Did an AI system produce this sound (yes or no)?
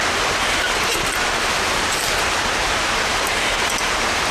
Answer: no